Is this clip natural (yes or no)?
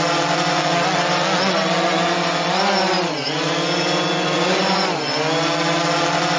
yes